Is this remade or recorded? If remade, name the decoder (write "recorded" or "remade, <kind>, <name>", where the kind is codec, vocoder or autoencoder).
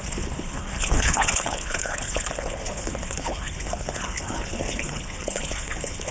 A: remade, codec, HILCodec